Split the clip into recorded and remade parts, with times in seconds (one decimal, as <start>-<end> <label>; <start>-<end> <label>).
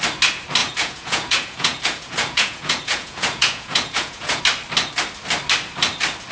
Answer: 0.0-0.6 recorded; 0.6-4.4 remade; 4.4-6.3 recorded